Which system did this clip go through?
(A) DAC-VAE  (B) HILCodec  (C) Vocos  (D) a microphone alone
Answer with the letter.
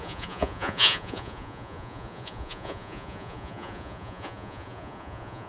C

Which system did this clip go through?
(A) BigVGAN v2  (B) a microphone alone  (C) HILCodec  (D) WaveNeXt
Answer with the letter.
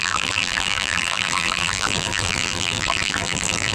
A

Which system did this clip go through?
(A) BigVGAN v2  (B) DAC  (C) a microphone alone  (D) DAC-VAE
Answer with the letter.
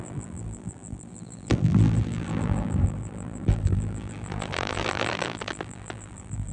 A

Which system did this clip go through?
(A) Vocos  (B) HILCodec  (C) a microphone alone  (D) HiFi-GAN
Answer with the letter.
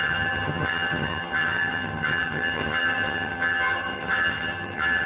D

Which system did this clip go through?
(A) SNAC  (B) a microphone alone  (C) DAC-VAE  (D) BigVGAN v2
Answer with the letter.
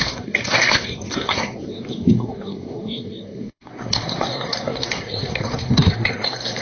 A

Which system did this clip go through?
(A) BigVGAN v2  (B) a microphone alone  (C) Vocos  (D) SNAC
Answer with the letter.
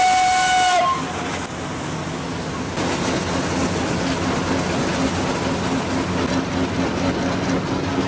B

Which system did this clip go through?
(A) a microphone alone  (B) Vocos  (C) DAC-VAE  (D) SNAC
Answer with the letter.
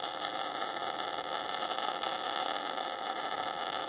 A